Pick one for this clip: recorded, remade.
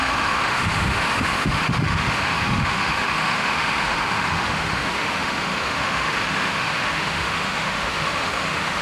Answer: remade